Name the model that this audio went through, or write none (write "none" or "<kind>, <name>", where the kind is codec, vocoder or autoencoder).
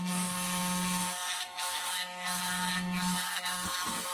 codec, SNAC